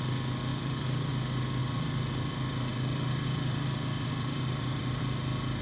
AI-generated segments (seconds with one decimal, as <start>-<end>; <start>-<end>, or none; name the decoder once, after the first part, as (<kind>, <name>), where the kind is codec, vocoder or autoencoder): 0.5-1.1 (vocoder, BigVGAN v2); 1.6-5.0